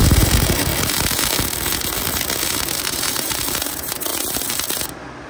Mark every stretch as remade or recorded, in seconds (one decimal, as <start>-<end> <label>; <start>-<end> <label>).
0.0-0.7 remade; 0.7-2.8 recorded; 2.8-4.1 remade; 4.1-5.3 recorded

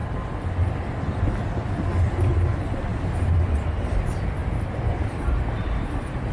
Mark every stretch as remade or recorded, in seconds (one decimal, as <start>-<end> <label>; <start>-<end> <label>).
0.0-2.1 recorded; 2.1-6.3 remade

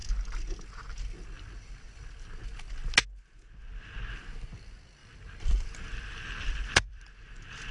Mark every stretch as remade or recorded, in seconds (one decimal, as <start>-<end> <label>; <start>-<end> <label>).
0.0-5.0 recorded; 5.0-7.0 remade; 7.0-7.7 recorded

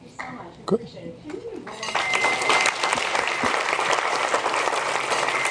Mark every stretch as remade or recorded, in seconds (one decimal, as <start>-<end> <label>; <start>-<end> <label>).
0.0-5.5 recorded

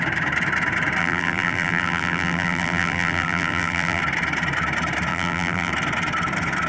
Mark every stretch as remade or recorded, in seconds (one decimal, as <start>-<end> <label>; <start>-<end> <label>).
0.0-1.0 recorded; 1.0-4.0 remade; 4.0-5.1 recorded; 5.1-5.7 remade; 5.7-6.7 recorded

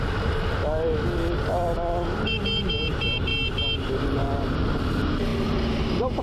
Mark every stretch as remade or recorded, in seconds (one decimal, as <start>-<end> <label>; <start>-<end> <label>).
0.0-0.6 remade; 0.6-2.9 recorded; 2.9-3.3 remade; 3.3-3.9 recorded; 3.9-6.2 remade